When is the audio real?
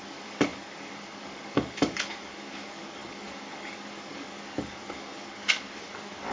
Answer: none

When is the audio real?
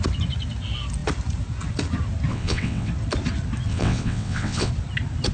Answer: 0.0-2.3; 2.9-3.7; 4.7-5.3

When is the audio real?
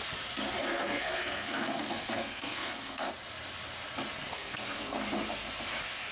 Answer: 0.0-0.7; 3.1-4.3; 4.8-6.1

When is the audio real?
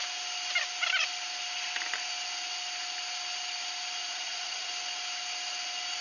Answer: 0.0-4.0; 4.7-6.0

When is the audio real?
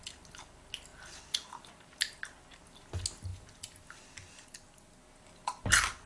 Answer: 0.0-6.1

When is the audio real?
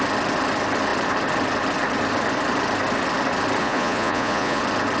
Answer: 0.0-3.6; 4.6-5.0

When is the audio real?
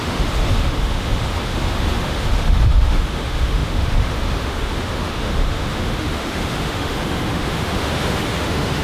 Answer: none